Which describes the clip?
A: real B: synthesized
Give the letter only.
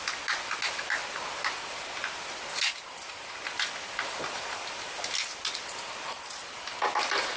A